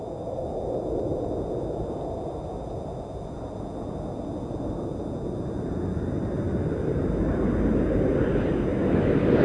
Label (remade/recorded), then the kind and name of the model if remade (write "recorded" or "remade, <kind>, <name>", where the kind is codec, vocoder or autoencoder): recorded